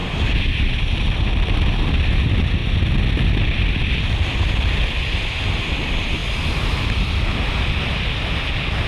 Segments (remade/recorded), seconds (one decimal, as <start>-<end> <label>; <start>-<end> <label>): 0.0-1.0 remade; 1.0-8.9 recorded